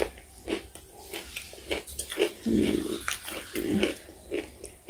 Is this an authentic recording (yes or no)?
yes